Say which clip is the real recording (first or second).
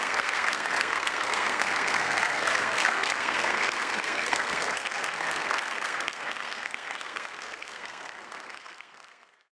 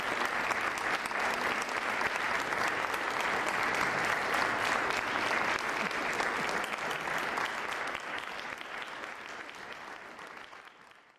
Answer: second